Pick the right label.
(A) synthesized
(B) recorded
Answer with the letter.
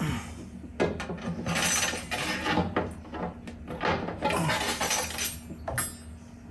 B